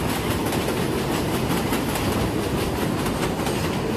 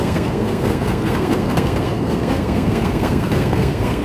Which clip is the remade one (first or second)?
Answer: second